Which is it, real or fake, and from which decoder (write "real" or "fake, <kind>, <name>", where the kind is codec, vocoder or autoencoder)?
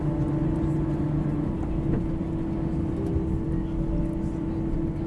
real